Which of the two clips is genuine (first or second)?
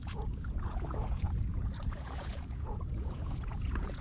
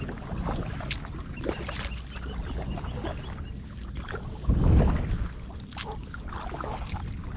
second